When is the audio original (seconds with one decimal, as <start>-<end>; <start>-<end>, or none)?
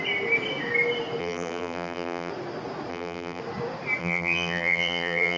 0.0-1.2; 2.3-2.9; 3.4-4.0